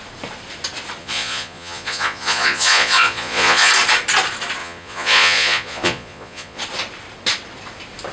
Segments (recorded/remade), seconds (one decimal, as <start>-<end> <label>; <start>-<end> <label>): 0.0-1.0 recorded; 1.0-3.7 remade; 3.7-4.6 recorded; 4.6-6.6 remade; 6.6-8.1 recorded